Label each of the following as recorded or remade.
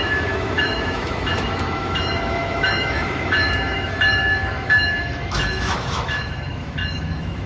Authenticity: remade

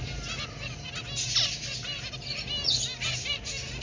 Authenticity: recorded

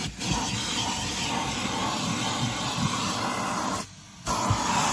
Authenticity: recorded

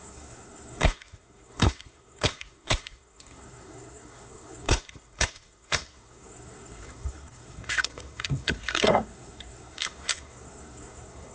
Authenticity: remade